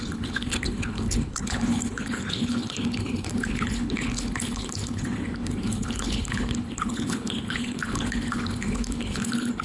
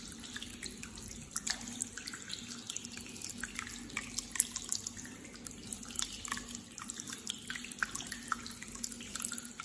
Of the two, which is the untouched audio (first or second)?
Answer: second